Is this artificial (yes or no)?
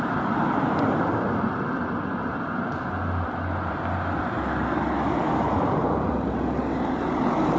no